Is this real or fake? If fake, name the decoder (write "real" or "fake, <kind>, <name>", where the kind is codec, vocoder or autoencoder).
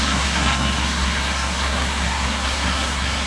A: fake, codec, SNAC